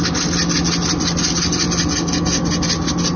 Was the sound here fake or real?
real